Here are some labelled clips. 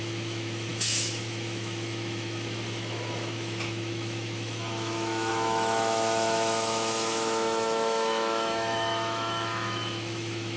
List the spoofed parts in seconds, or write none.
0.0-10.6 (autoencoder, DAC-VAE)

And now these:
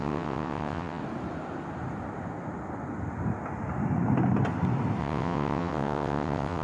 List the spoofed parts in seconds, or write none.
0.0-1.0 (vocoder, WaveNeXt); 5.0-6.6

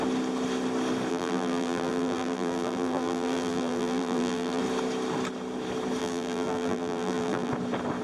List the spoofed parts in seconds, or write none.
1.1-4.6 (vocoder, BigVGAN v2); 6.0-7.5

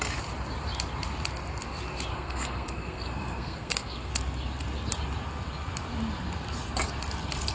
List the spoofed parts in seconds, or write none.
2.1-4.1 (codec, SNAC)

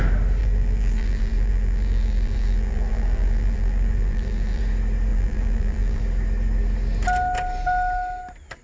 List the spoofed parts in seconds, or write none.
0.4-4.6 (vocoder, BigVGAN v2); 5.1-6.0

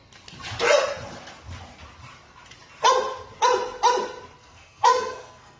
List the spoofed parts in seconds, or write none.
4.4-5.6 (codec, SNAC)

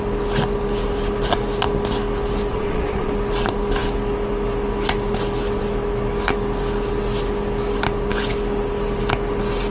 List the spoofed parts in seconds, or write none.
2.5-3.1 (vocoder, Vocos)